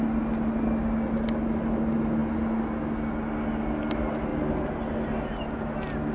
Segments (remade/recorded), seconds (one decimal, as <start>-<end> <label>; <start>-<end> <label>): 0.0-6.1 recorded